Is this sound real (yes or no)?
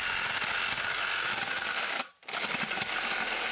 yes